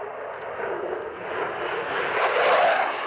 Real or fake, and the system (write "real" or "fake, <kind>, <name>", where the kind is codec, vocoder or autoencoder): real